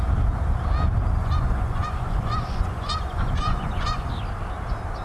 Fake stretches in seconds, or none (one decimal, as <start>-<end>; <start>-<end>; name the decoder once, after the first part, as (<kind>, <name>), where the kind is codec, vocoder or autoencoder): 1.2-4.2 (vocoder, Vocos)